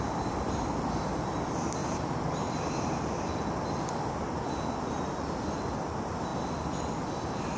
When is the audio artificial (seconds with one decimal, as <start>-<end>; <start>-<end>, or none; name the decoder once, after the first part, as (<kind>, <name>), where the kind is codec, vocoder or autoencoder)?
1.8-2.7 (vocoder, BigVGAN v2)